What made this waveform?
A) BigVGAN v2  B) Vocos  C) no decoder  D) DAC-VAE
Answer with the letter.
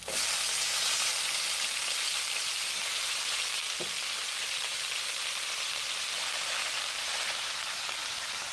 C